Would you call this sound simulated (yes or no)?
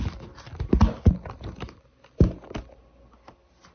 no